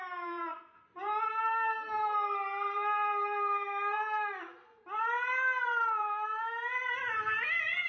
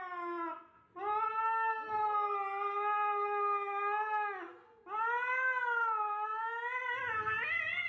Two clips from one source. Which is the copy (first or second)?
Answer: first